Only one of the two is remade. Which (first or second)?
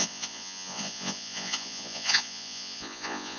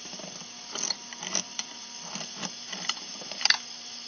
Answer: first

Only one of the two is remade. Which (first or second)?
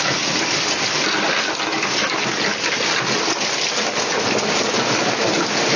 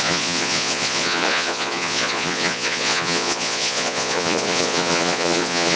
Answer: second